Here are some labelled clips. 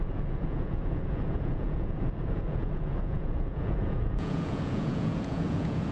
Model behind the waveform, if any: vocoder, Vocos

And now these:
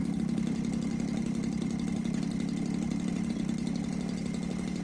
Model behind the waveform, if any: none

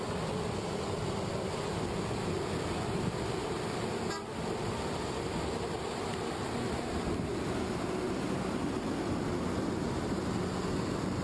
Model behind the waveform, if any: none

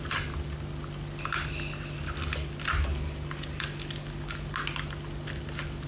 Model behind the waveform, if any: none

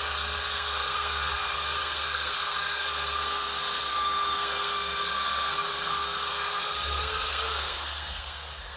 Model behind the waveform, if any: codec, SNAC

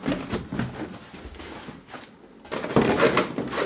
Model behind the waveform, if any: none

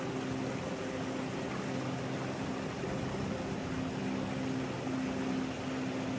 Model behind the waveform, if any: none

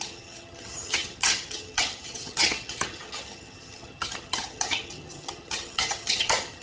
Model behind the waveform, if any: vocoder, HiFi-GAN